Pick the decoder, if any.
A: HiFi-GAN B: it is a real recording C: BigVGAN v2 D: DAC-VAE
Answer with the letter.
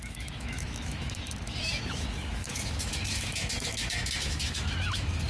D